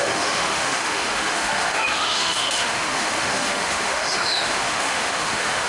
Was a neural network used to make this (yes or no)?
yes